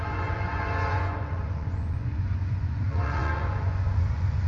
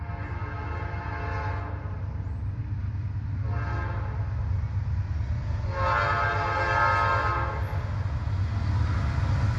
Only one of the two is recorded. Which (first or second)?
second